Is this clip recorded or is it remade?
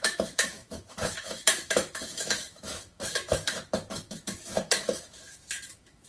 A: remade